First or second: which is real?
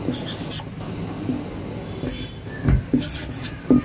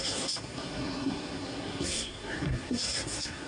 first